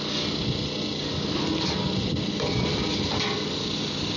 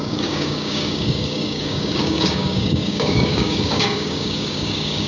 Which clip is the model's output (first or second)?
second